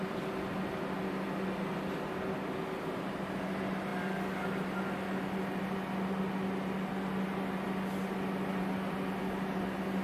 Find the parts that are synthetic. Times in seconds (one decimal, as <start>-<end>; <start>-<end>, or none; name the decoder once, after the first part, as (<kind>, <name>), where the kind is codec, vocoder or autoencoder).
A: none